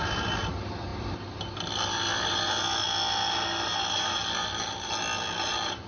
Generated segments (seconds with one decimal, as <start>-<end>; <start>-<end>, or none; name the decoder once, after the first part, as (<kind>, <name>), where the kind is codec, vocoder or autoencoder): none